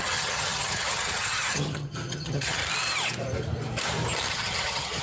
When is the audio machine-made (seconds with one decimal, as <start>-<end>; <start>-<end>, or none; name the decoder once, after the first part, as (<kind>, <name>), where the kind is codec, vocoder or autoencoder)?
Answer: 0.0-2.6 (vocoder, HiFi-GAN); 4.3-5.0